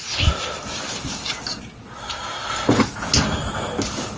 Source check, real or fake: real